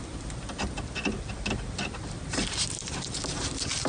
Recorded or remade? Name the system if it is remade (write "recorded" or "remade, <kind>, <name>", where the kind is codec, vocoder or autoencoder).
remade, vocoder, BigVGAN v2